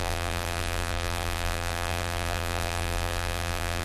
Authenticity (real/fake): fake